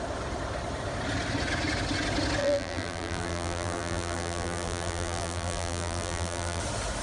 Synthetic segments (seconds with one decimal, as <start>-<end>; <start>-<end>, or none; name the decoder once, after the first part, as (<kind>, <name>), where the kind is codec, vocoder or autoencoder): 2.4-6.6 (vocoder, BigVGAN v2)